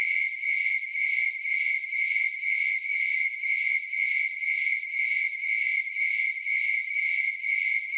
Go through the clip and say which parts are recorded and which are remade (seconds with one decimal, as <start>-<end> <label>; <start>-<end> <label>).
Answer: 0.0-0.9 remade; 0.9-1.5 recorded; 1.5-8.0 remade